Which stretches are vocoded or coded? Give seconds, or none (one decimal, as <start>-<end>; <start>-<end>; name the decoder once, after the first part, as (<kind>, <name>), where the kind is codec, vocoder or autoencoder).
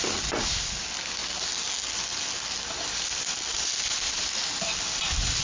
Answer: none